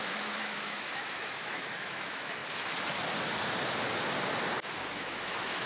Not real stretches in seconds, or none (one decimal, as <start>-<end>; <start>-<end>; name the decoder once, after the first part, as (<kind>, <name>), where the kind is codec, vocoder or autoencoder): 0.0-2.4 (autoencoder, DAC-VAE); 4.9-5.7